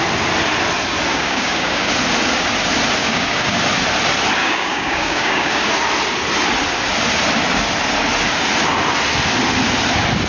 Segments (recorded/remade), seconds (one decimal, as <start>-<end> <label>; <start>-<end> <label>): 0.0-1.1 recorded; 1.1-1.9 remade; 1.9-3.0 recorded; 3.0-3.6 remade; 3.6-4.4 recorded; 4.4-5.7 remade; 5.7-10.3 recorded